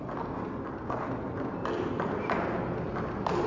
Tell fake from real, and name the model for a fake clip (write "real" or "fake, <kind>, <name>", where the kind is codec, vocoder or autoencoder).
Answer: real